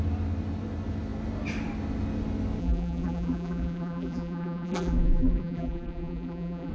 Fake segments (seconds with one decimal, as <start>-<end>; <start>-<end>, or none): 2.6-6.7